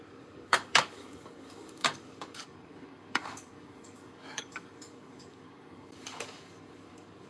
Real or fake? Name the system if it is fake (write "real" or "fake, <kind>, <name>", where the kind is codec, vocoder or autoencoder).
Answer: fake, codec, DAC